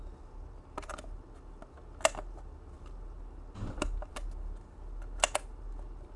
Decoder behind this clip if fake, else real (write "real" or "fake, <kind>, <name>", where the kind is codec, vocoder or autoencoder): real